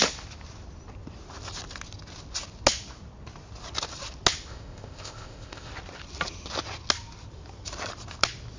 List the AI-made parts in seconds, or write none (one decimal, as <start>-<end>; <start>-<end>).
4.5-5.7

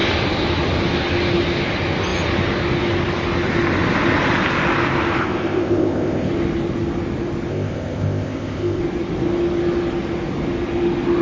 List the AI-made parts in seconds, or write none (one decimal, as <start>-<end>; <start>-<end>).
5.2-6.3; 7.5-8.8

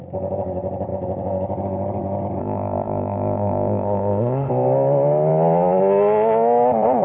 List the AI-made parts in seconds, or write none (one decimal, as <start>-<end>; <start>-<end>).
2.4-4.5

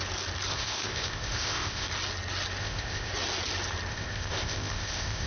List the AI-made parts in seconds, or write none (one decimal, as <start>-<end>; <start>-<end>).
0.5-1.9; 2.6-3.1; 3.9-5.3

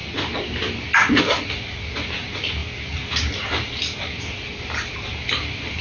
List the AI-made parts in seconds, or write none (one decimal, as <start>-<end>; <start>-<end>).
none

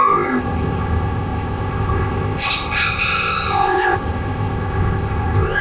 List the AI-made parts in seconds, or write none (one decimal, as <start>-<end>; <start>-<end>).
0.0-5.6

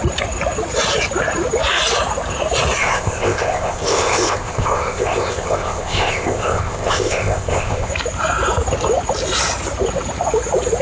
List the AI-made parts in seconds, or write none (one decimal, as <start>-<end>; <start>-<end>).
2.8-7.9

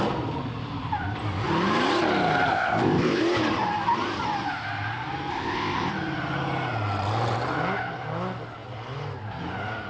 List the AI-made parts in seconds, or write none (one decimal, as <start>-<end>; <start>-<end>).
2.5-3.2; 5.3-5.9